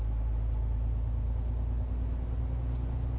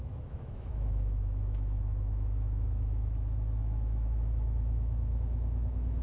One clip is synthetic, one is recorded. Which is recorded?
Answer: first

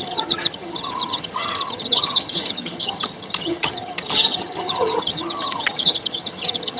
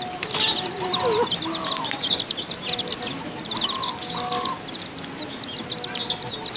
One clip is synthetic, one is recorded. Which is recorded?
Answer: second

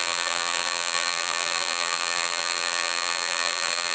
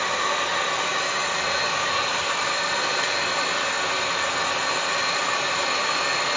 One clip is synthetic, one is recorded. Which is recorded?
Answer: second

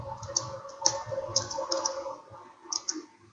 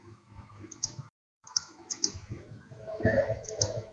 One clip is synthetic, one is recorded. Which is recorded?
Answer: first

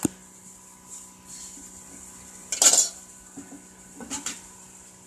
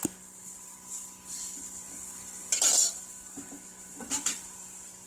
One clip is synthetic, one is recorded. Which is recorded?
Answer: first